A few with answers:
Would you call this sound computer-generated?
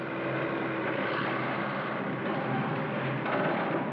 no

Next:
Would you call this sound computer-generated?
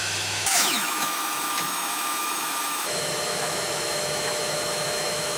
yes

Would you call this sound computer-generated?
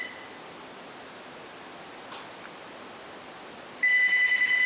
no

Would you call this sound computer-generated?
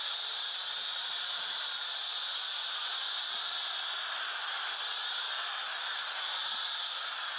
no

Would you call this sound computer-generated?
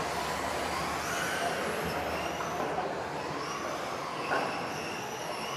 no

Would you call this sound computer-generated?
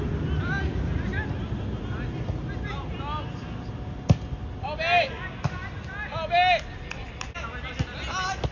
no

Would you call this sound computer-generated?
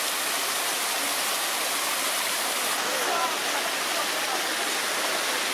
no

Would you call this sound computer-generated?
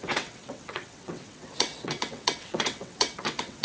yes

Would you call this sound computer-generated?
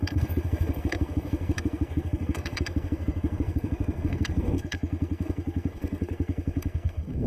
yes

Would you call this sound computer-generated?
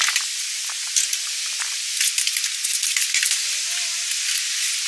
no